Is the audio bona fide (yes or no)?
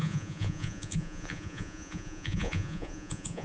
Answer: no